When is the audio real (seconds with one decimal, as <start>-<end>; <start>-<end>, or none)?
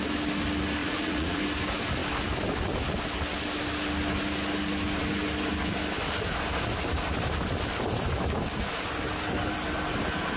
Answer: 0.0-0.8; 1.4-10.4